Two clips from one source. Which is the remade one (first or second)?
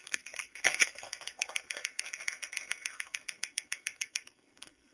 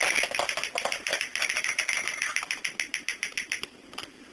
first